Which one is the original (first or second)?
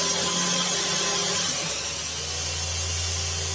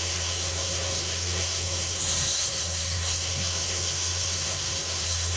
first